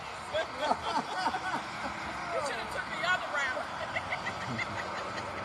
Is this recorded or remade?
recorded